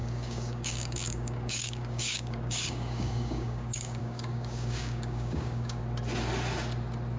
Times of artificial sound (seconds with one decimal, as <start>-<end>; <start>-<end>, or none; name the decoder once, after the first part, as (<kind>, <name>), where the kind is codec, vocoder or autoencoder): 0.0-5.8 (codec, DAC)